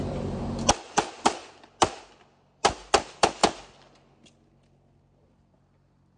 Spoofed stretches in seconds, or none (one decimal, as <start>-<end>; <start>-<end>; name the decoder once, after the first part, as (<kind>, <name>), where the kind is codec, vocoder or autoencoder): 0.0-1.4 (vocoder, BigVGAN v2); 2.4-3.4